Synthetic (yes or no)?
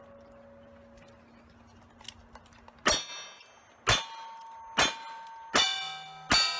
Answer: no